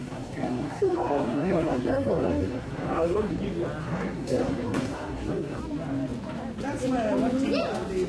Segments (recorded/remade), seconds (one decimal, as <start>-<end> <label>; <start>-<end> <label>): 0.0-3.4 remade; 3.4-3.8 recorded; 3.8-5.6 remade; 5.6-8.1 recorded